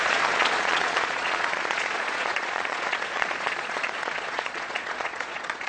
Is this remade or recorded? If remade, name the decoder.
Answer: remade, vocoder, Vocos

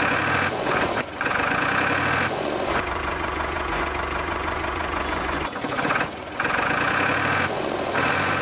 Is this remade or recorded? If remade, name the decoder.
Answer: remade, vocoder, Vocos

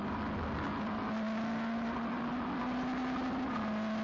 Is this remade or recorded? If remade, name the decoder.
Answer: recorded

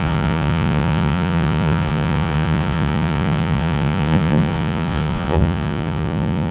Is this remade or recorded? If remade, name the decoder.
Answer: remade, vocoder, Vocos